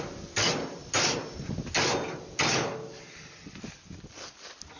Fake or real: real